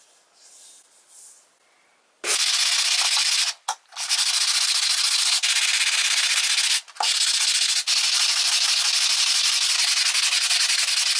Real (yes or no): yes